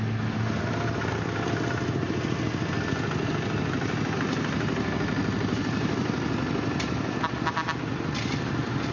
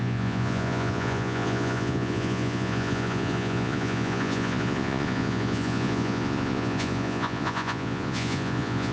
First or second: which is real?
first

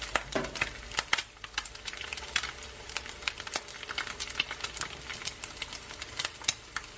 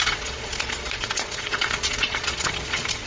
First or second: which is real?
first